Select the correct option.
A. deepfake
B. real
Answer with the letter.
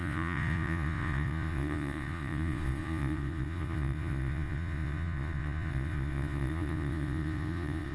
A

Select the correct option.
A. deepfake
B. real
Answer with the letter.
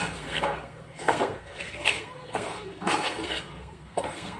A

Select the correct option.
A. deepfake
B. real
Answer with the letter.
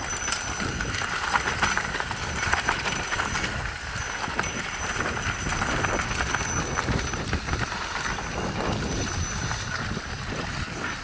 B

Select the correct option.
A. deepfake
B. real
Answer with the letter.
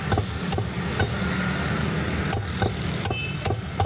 B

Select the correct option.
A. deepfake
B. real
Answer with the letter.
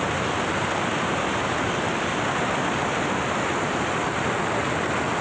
B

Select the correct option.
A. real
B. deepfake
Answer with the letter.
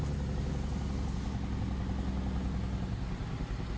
A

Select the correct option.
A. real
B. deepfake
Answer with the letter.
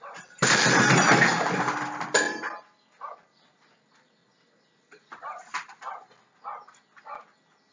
A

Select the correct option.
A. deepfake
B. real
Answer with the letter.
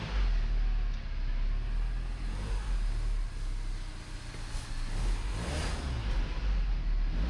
B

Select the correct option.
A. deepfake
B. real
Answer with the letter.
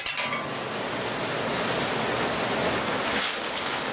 B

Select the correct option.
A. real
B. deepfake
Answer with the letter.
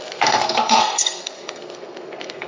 B